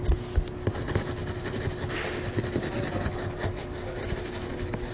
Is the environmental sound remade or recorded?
recorded